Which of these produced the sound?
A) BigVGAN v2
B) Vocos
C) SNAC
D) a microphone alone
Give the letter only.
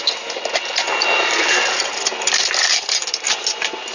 A